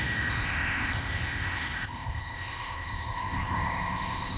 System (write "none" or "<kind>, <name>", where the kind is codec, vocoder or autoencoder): codec, ZipCodec